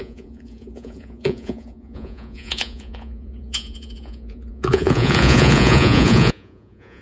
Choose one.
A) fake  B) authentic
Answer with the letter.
A